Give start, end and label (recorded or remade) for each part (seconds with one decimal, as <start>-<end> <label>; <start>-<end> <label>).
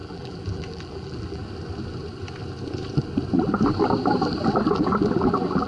0.0-1.4 remade; 1.4-4.7 recorded; 4.7-5.7 remade